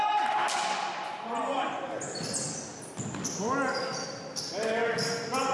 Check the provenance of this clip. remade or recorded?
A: recorded